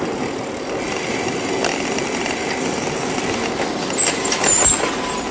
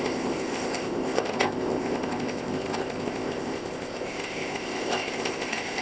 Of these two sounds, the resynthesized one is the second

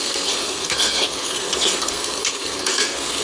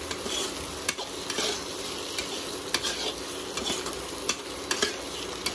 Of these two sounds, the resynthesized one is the first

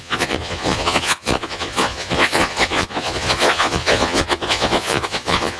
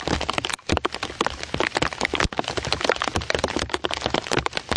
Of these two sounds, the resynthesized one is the first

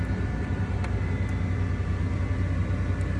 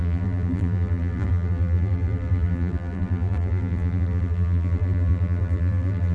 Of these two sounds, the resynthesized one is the second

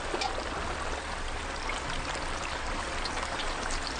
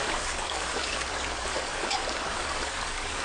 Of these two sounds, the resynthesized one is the second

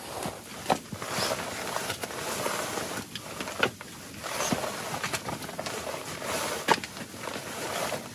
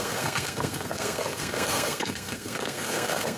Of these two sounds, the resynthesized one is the second